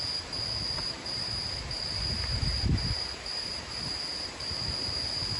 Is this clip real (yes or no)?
no